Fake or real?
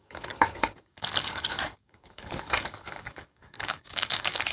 fake